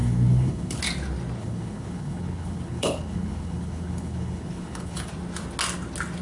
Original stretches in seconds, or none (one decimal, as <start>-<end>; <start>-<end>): 0.8-1.4; 5.1-6.2